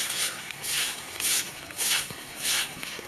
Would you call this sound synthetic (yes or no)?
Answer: yes